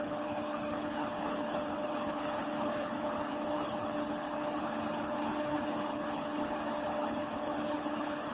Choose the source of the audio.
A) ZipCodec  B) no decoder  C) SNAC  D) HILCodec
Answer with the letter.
D